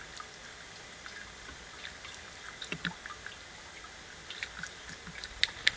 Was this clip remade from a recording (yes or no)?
no